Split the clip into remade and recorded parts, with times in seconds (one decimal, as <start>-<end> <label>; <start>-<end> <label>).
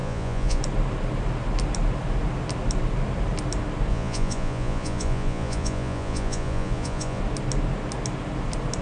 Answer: 0.0-0.6 remade; 0.6-3.9 recorded; 3.9-7.2 remade; 7.2-8.8 recorded